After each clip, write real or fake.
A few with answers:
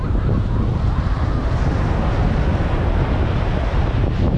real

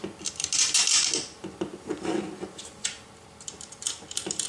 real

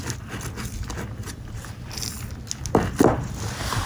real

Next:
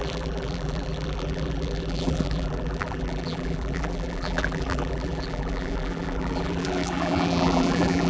fake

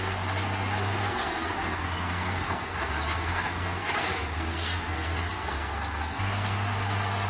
fake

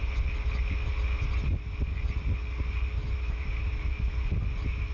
real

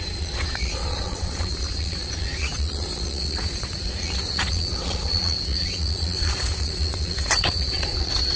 fake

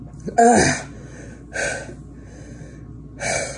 real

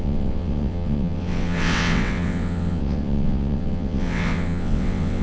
fake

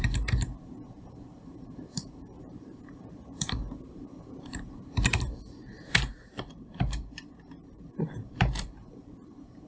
fake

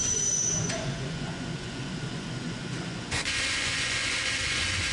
fake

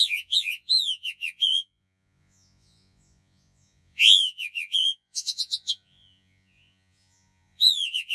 fake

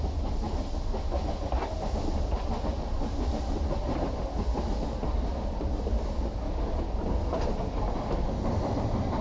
real